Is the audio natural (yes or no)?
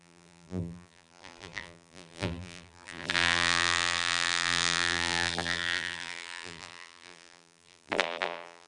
no